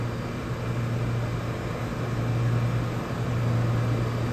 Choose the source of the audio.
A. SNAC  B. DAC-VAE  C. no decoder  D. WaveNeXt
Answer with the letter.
C